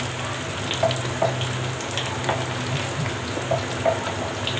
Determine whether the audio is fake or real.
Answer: real